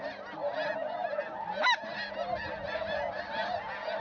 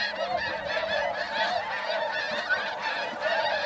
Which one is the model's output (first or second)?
second